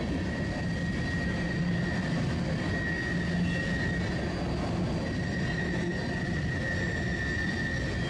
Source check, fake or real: real